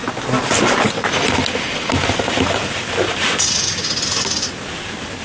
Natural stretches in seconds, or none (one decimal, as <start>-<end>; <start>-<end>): 0.0-5.2